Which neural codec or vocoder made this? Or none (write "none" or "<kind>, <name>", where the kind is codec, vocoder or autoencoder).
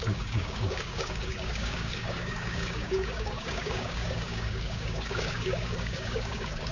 codec, DAC